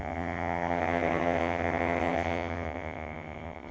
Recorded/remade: remade